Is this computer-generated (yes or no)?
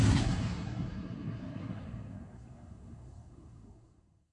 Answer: yes